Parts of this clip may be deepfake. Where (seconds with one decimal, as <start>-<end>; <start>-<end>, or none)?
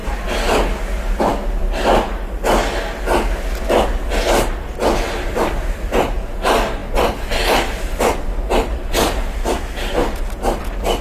none